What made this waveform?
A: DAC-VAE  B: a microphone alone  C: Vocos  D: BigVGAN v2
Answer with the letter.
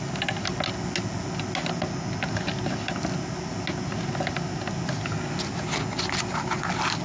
B